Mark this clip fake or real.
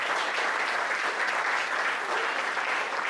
fake